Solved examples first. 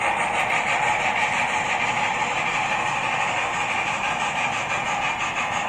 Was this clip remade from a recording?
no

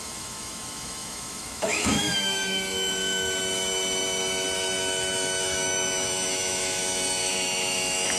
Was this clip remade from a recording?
yes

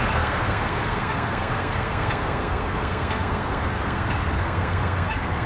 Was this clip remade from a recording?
yes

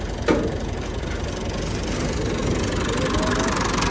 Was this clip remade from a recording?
no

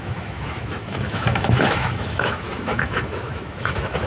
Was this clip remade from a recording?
yes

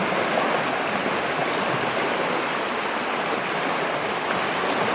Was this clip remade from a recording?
no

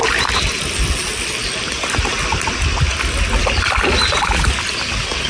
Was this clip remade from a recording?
no